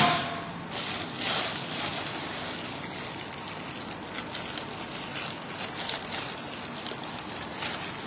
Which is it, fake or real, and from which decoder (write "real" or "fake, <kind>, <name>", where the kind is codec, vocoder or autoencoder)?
real